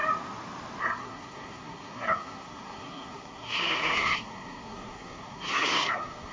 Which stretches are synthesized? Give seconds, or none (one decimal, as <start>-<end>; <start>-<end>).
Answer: 0.8-6.3